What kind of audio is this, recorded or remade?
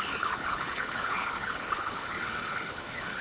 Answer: remade